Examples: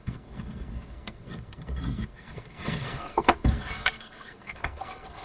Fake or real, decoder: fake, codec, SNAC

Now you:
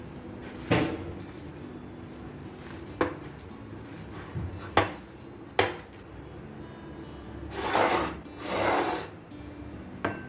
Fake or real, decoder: real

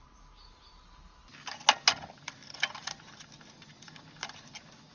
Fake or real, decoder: real